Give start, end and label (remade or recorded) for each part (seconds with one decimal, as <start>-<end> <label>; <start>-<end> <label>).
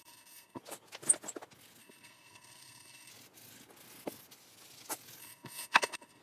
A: 0.0-0.6 remade; 0.6-1.8 recorded; 1.8-3.1 remade; 3.1-5.2 recorded; 5.2-6.2 remade